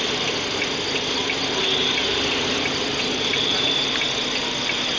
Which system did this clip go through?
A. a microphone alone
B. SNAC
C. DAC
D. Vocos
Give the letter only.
A